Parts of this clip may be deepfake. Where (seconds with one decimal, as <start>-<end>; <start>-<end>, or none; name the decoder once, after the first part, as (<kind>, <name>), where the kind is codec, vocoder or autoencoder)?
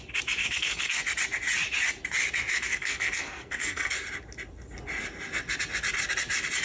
0.4-1.0 (codec, SNAC); 2.5-3.9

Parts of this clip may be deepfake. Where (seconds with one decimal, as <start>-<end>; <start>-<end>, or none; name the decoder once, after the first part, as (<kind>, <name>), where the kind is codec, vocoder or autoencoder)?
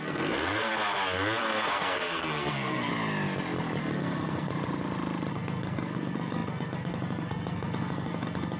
0.0-0.7 (codec, SNAC); 1.4-2.9; 3.8-4.5; 5.3-8.6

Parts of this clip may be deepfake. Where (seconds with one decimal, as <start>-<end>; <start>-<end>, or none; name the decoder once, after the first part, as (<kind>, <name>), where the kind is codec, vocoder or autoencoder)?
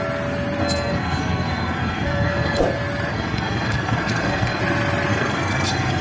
0.6-2.6 (codec, SNAC); 3.1-4.6; 5.1-6.0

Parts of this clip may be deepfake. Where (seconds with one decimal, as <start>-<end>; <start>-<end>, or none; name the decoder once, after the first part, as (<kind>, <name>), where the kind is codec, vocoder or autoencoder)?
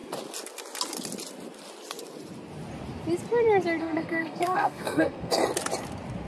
3.8-5.4 (codec, SNAC)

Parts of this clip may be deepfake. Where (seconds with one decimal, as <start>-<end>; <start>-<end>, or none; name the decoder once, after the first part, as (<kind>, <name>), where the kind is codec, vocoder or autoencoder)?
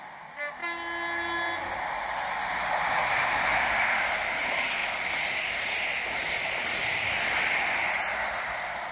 none